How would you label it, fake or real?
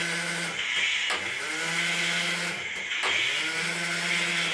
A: real